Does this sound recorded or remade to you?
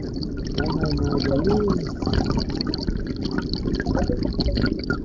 recorded